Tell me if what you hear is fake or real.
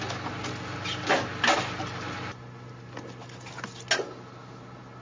real